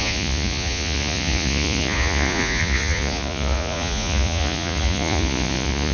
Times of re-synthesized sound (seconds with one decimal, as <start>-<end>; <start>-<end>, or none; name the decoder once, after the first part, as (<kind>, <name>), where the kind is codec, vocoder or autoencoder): 0.0-5.9 (vocoder, Vocos)